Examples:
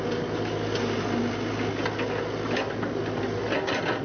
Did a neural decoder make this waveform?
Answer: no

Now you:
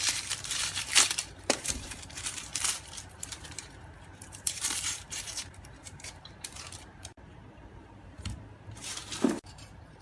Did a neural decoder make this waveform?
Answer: yes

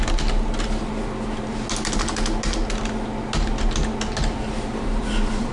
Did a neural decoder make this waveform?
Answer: no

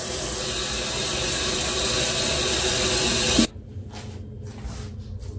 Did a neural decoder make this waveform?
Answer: no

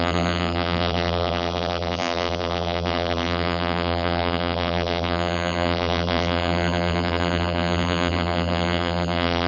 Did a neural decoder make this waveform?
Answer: yes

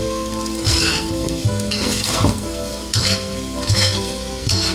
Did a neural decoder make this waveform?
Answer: yes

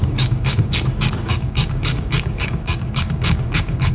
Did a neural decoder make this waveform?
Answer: yes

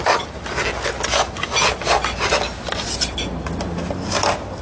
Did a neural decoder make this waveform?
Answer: no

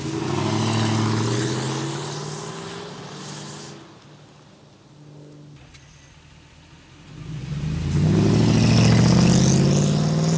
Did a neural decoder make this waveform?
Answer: no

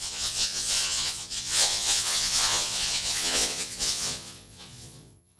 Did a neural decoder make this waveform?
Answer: yes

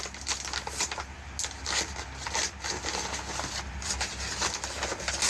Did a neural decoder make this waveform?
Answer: no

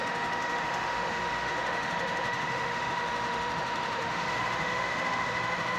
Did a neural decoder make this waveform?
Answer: yes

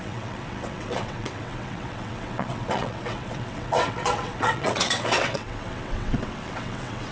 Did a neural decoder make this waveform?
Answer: yes